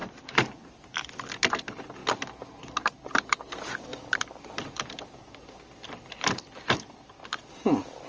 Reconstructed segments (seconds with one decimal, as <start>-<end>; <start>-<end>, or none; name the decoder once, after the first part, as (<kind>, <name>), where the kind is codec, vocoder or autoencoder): 0.0-1.0 (vocoder, BigVGAN v2)